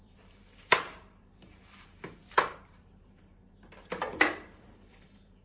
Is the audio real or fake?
fake